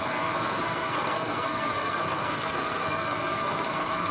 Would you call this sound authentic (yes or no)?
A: no